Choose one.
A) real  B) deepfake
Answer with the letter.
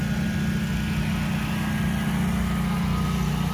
A